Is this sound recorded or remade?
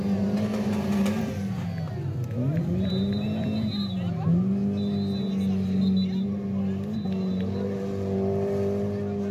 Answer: recorded